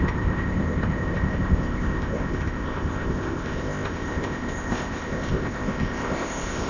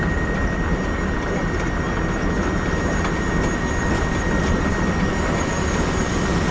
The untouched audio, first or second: second